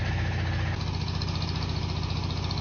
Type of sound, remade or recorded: recorded